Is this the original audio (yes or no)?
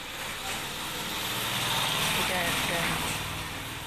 yes